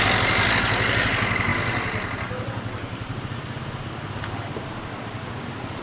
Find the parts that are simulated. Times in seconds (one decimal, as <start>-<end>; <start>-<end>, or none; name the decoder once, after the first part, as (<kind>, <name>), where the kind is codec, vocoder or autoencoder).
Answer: none